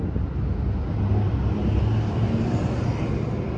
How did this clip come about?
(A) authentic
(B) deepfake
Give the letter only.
A